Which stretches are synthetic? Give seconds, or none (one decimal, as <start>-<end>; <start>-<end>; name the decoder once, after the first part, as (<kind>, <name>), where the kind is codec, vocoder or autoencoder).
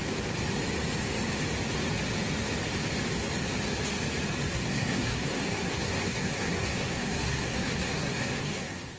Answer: 4.5-9.0 (codec, SNAC)